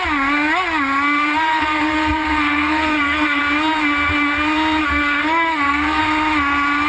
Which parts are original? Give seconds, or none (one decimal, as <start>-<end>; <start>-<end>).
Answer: 0.0-1.5; 3.4-4.8; 6.0-6.9